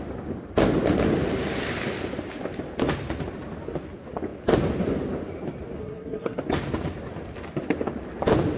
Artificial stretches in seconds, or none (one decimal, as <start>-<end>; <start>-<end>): 5.8-6.4